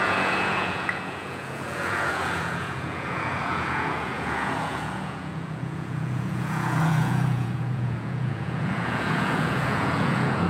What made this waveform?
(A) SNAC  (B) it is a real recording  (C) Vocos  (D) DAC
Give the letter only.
C